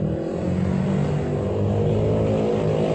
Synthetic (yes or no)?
no